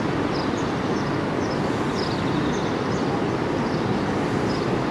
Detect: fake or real real